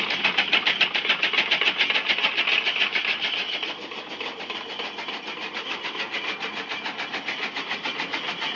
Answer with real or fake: real